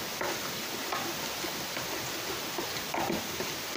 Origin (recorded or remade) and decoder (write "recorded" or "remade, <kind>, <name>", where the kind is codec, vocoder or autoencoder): recorded